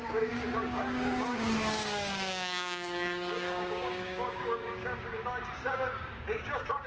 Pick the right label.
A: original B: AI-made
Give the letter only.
B